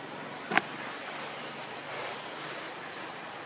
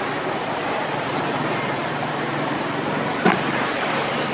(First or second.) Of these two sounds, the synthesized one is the second